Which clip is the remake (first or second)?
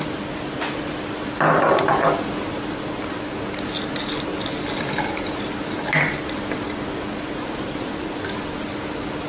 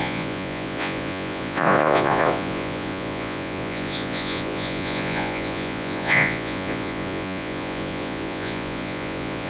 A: second